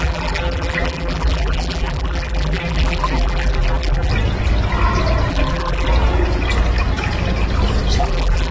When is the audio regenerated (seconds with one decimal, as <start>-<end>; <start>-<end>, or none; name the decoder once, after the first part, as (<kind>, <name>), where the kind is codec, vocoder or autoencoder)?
0.0-4.1 (vocoder, BigVGAN v2); 5.3-5.9; 8.0-8.5